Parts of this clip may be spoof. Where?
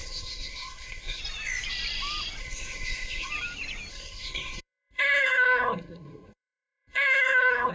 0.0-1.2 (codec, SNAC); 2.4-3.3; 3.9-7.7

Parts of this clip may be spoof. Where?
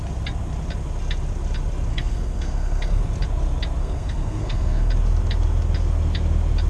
1.9-3.0 (codec, SNAC); 3.8-4.9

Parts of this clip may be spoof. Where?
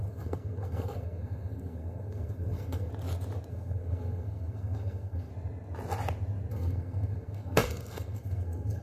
0.0-2.9 (codec, SNAC); 3.5-5.3; 6.5-8.8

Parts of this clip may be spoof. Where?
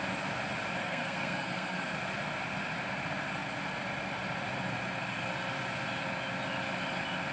0.8-1.9 (codec, SNAC)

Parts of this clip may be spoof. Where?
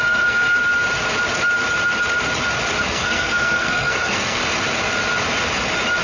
0.0-0.6 (codec, SNAC); 2.8-4.4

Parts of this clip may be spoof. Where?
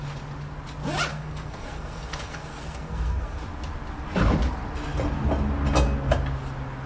1.1-3.4 (codec, SNAC)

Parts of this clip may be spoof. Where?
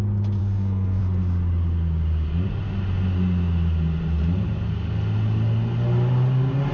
0.4-1.0 (codec, SNAC)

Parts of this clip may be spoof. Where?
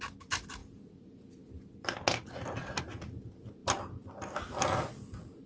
none